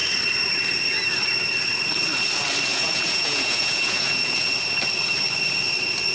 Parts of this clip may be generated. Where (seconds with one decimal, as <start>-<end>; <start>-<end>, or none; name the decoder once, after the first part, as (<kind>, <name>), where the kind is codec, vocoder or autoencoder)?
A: 2.7-4.5 (vocoder, Vocos)